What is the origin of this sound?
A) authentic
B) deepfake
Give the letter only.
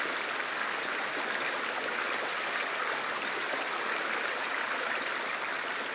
A